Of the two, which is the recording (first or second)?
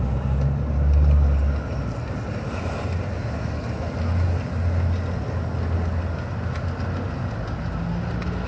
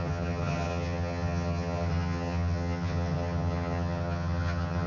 first